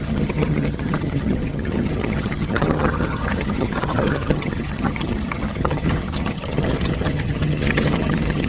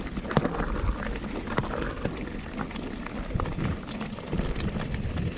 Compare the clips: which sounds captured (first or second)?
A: second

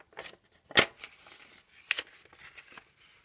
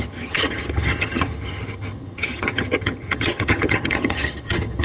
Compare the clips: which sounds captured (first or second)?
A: first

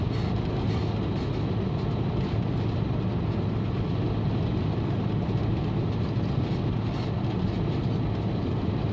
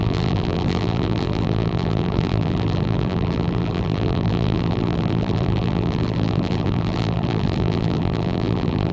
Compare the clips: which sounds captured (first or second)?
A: first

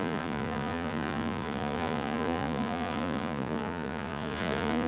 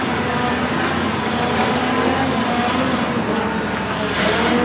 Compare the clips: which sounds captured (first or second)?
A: second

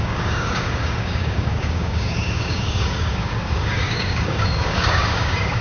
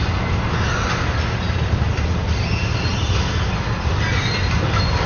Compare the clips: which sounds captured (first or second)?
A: second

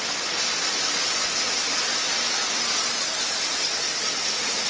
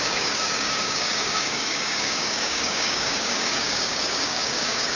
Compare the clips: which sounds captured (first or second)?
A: first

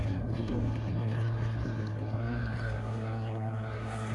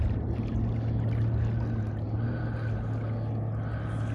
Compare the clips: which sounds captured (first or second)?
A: second